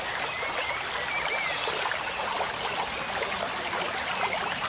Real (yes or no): yes